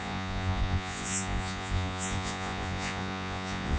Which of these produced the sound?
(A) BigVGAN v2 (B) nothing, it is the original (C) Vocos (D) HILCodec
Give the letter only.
C